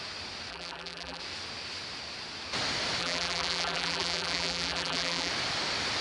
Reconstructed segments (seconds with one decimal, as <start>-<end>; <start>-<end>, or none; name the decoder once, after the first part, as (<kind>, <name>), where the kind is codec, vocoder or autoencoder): 0.5-1.2 (vocoder, BigVGAN v2); 3.0-5.3